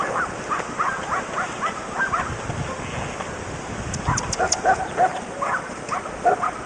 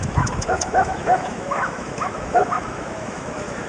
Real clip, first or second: first